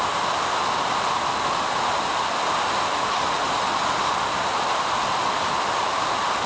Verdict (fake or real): real